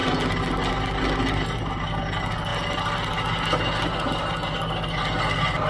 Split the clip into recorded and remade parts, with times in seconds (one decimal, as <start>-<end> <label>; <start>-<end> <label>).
0.0-5.7 recorded